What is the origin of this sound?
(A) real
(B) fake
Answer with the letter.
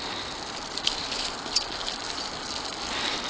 A